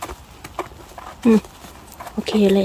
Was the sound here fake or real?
real